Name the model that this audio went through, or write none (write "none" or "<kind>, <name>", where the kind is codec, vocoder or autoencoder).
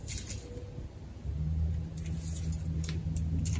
none